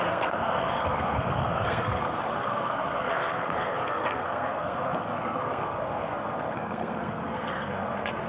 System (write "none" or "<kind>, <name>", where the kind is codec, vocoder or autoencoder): codec, SNAC